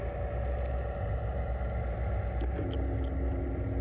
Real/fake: real